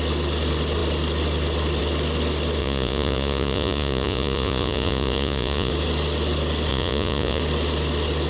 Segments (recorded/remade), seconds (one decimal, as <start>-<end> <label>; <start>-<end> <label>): 0.0-2.6 recorded; 2.6-5.7 remade; 5.7-6.7 recorded; 6.7-7.4 remade; 7.4-8.3 recorded